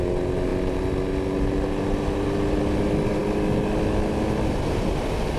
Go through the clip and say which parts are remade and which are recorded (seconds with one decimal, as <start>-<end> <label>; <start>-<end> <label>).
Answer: 0.0-5.4 recorded